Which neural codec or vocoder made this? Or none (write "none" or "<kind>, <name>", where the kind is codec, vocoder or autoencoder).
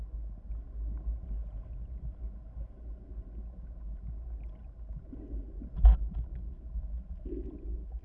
none